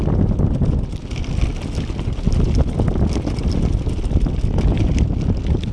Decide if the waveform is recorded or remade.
recorded